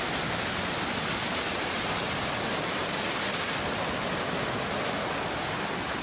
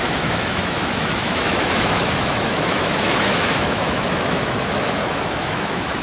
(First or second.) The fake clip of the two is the second